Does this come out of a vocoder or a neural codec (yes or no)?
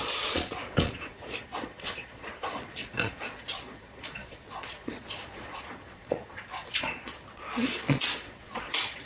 yes